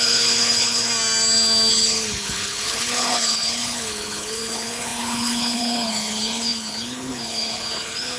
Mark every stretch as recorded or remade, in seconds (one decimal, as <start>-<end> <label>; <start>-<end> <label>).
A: 0.0-0.9 remade; 0.9-1.7 recorded; 1.7-8.2 remade